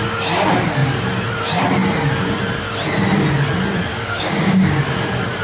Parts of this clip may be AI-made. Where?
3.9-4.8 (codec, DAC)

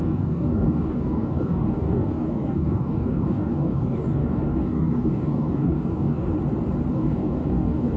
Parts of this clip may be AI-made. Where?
0.0-6.3 (codec, DAC); 6.9-8.0

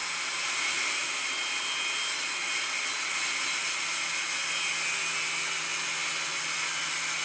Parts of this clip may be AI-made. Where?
none